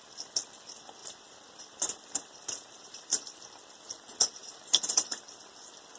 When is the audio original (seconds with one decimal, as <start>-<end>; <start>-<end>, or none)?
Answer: 0.0-1.0; 3.3-4.4; 5.2-6.0